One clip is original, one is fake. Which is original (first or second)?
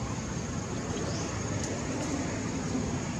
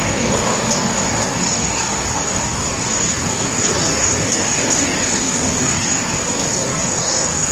first